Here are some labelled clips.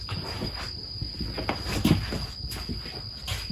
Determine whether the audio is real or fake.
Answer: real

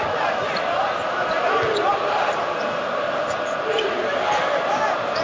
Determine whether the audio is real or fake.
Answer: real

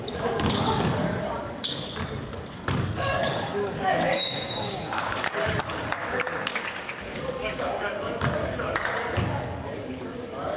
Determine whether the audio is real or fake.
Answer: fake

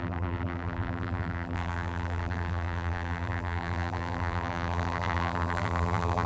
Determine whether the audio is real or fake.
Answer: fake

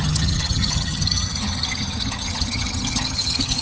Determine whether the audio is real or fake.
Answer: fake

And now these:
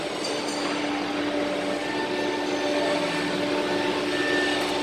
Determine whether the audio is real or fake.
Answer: real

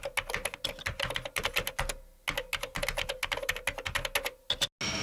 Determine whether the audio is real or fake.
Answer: real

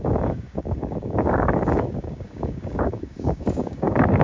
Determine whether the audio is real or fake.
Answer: fake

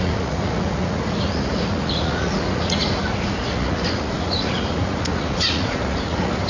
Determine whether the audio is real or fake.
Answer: fake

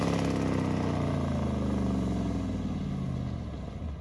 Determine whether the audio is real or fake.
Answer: real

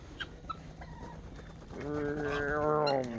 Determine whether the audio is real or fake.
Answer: real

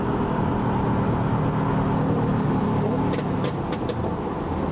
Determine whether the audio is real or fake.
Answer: real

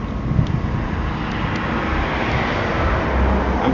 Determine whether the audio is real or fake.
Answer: real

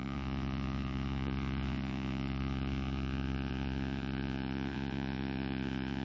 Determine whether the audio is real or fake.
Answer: fake